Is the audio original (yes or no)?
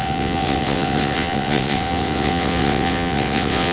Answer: no